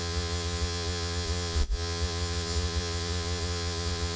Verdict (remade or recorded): remade